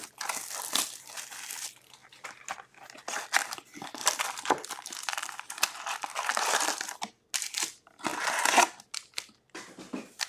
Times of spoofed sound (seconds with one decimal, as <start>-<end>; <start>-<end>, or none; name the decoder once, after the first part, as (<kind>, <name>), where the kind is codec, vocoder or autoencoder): 4.0-4.5 (vocoder, BigVGAN v2)